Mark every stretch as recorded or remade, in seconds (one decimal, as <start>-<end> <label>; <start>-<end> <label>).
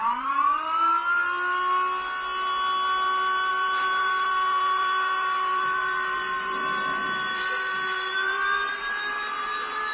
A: 0.0-0.9 remade; 0.9-3.5 recorded; 3.5-9.9 remade